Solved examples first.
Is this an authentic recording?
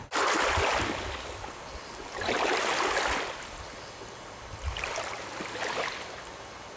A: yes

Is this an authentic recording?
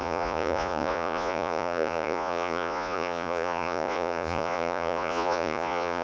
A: no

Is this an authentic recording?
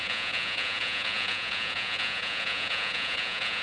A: no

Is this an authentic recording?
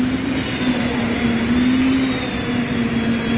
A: yes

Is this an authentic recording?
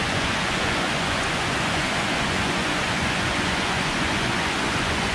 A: no